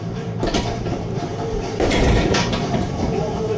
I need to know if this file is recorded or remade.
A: remade